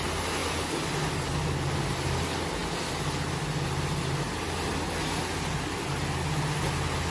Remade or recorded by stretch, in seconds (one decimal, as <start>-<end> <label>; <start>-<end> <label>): 0.0-7.1 recorded